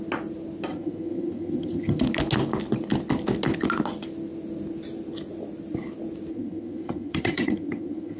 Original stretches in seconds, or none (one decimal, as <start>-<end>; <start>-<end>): 0.0-0.7; 2.0-6.3